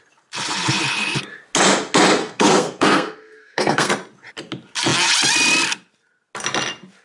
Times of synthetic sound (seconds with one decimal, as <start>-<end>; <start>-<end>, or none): 2.2-3.9